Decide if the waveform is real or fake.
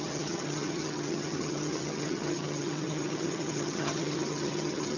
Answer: fake